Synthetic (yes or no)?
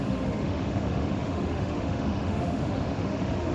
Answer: yes